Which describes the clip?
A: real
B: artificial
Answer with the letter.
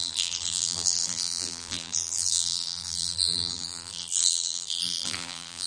B